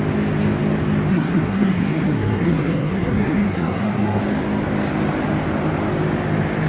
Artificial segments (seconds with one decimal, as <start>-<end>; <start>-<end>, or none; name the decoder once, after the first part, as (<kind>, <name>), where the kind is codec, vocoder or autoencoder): 1.1-4.2 (codec, SNAC)